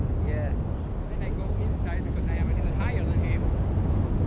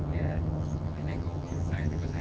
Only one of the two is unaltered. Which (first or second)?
first